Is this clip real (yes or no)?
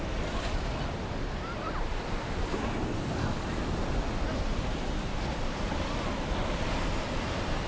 yes